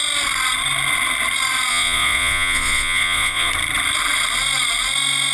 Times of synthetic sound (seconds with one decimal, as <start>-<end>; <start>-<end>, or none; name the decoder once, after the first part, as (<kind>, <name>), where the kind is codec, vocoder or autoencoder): 1.7-3.5 (vocoder, Vocos)